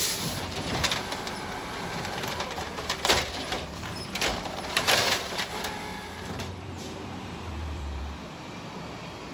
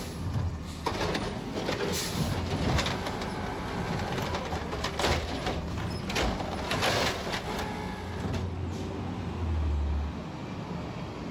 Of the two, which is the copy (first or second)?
first